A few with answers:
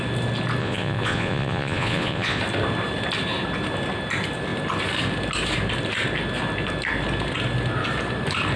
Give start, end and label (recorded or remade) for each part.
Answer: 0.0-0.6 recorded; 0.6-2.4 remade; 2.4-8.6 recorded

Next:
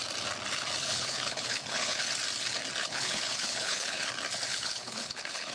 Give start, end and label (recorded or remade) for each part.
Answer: 0.0-0.8 recorded; 0.8-2.0 remade; 2.0-2.8 recorded; 2.8-4.1 remade; 4.1-4.5 recorded; 4.5-5.5 remade

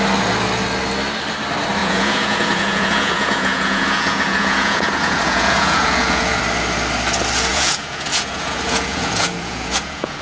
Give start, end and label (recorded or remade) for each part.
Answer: 0.0-1.8 recorded; 1.8-6.4 remade; 6.4-7.5 recorded; 7.5-10.2 remade

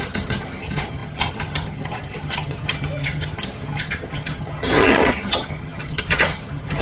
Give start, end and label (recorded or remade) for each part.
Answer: 0.0-6.8 remade

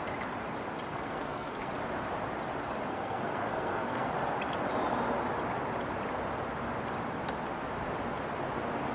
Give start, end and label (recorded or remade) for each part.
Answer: 0.0-0.9 recorded; 0.9-1.7 remade; 1.7-2.9 recorded; 2.9-4.1 remade; 4.1-8.9 recorded